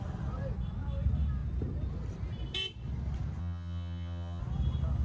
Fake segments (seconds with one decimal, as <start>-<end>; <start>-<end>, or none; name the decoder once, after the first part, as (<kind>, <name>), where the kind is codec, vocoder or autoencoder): 3.4-4.4 (vocoder, HiFi-GAN)